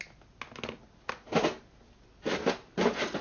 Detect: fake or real real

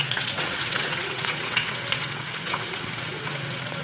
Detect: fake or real fake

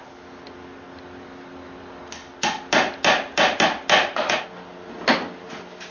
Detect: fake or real real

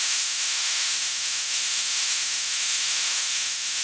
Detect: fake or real fake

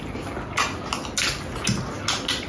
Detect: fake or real real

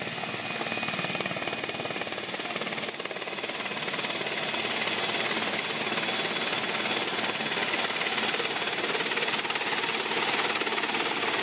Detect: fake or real real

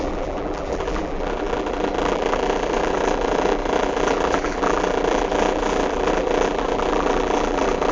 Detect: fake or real fake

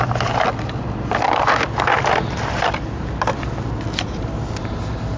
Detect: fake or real real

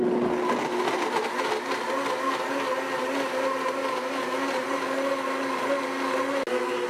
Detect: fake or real real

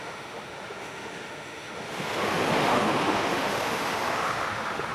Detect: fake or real fake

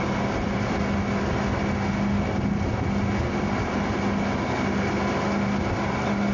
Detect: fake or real real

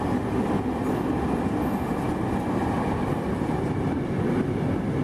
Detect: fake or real real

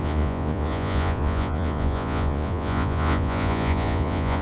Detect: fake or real fake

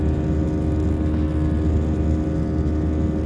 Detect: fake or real real